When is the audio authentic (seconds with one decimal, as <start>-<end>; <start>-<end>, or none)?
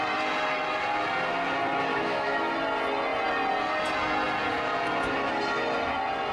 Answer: 0.0-1.9; 2.5-6.3